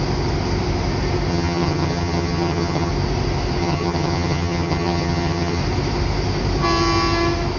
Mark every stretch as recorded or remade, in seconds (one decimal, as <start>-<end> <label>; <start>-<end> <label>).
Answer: 0.0-1.3 recorded; 1.3-2.9 remade; 2.9-3.6 recorded; 3.6-5.6 remade; 5.6-7.6 recorded